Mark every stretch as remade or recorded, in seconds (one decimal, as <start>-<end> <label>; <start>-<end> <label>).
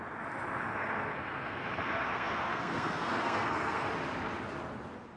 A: 0.0-0.8 recorded; 0.8-3.9 remade; 3.9-5.2 recorded